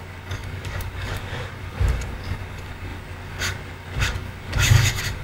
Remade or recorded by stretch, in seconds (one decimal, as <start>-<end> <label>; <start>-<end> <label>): 0.0-5.2 remade